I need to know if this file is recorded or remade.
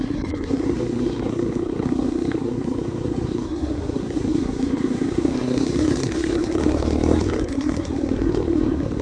remade